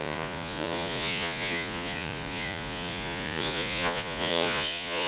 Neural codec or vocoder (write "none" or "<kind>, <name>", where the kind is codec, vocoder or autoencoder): vocoder, Vocos